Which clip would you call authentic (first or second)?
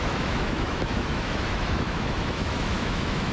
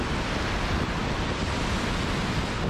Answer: second